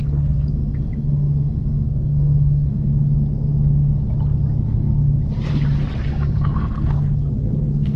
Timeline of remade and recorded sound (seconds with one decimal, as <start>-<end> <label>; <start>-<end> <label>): 0.0-2.9 remade; 2.9-6.1 recorded; 6.1-8.0 remade